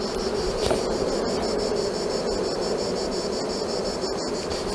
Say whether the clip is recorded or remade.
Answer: recorded